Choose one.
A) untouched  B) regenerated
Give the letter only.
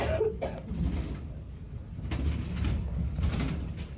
A